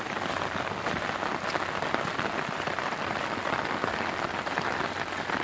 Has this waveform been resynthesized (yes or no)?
no